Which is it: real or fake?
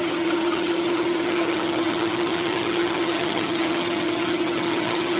fake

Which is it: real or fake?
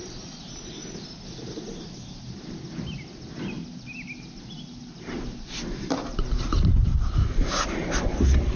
real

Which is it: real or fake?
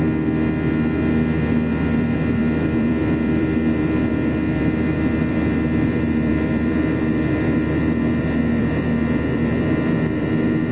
fake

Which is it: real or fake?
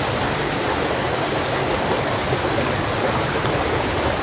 real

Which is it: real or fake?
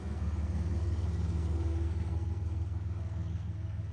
fake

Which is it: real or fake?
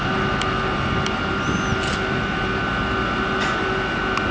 real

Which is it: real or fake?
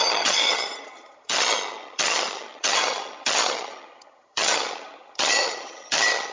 fake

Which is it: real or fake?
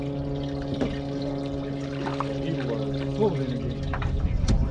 real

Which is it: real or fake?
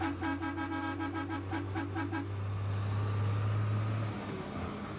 real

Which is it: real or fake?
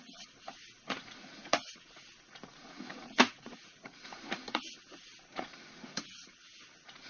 fake